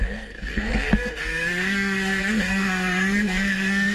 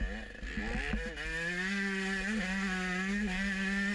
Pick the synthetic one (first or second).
first